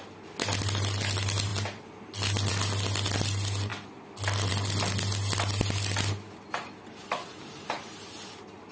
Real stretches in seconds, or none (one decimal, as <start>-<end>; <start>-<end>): 0.0-8.7